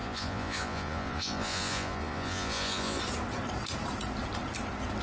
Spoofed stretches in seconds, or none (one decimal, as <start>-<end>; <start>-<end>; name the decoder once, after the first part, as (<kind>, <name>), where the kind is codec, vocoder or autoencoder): 0.0-3.0 (vocoder, Vocos)